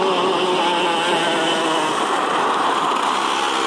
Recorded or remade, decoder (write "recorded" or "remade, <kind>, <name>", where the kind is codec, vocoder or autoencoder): recorded